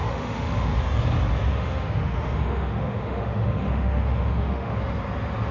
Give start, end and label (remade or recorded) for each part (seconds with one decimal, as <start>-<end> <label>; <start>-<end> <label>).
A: 0.0-0.8 remade; 0.8-1.5 recorded; 1.5-4.8 remade; 4.8-5.5 recorded